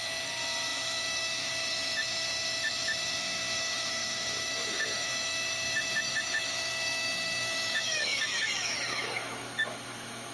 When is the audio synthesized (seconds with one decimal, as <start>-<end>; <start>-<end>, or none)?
0.0-10.3